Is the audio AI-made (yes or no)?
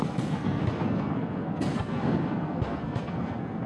yes